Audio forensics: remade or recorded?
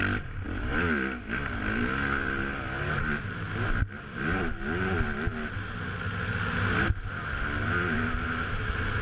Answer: recorded